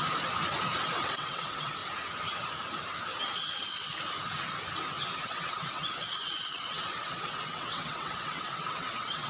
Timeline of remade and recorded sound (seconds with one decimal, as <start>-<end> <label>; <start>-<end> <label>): 0.0-0.9 recorded; 0.9-1.8 remade; 1.8-5.2 recorded; 5.2-9.3 remade